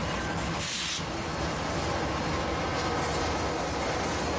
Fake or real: real